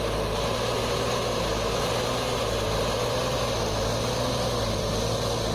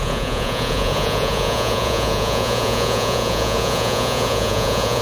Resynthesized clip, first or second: second